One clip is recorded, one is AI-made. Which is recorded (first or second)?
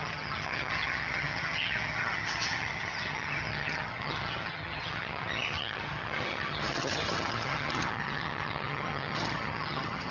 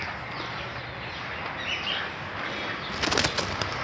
second